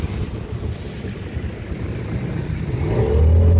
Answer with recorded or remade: recorded